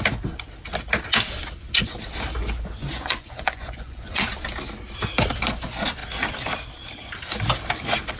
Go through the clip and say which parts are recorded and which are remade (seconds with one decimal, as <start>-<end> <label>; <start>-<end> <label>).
0.0-2.8 recorded; 2.8-4.2 remade; 4.2-8.2 recorded